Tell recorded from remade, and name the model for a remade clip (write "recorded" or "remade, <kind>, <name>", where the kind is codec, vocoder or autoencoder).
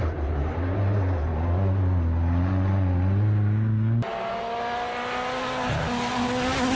recorded